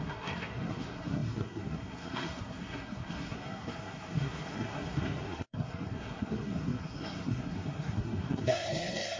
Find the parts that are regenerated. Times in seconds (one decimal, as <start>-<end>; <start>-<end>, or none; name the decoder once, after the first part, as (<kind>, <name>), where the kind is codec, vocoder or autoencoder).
0.0-9.2 (codec, SNAC)